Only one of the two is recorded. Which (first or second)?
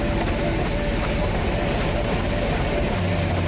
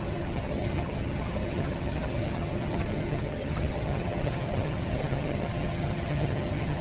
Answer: first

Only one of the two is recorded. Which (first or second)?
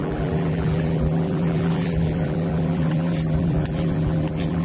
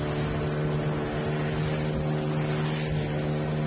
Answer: second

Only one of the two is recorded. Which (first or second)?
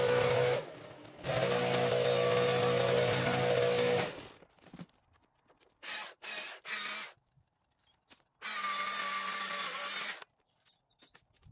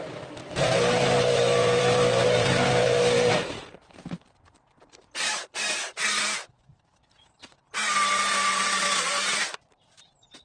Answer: first